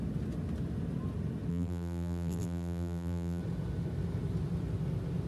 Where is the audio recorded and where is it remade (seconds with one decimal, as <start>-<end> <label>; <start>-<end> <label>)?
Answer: 0.0-1.5 recorded; 1.5-3.4 remade; 3.4-5.3 recorded